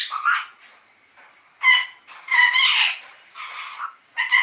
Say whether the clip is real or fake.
real